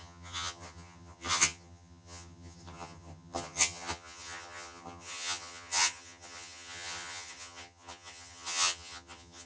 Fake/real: fake